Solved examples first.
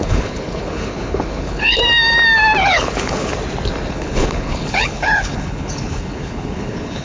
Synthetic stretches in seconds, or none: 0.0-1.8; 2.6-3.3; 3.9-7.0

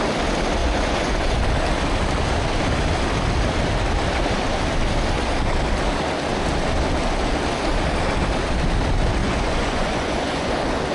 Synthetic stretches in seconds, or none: 0.6-1.4; 9.2-10.5

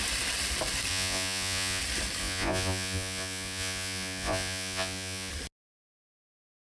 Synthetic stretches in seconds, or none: 0.9-1.8; 2.2-5.3

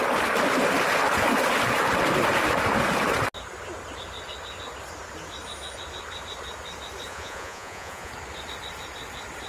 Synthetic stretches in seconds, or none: 7.1-8.1